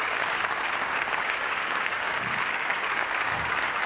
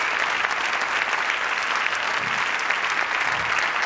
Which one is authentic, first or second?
second